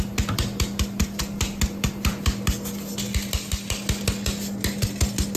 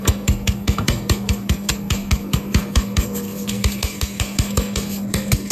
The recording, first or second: first